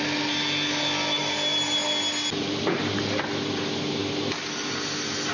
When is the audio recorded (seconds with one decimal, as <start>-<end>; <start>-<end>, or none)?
0.0-5.3